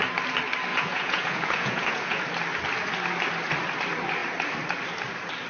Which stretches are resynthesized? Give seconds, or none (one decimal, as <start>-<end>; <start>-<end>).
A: 0.7-2.2